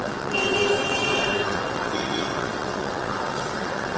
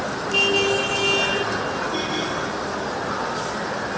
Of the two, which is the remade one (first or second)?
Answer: first